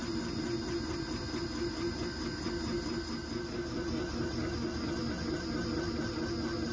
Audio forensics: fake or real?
real